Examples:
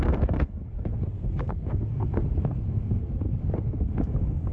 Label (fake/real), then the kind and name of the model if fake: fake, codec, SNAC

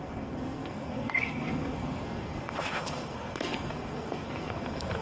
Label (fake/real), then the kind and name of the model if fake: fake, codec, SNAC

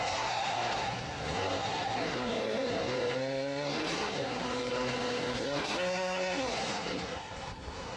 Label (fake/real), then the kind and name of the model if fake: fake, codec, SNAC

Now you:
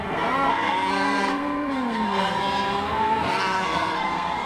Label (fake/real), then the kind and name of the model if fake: fake, codec, SNAC